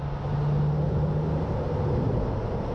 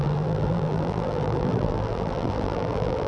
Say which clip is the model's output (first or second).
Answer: second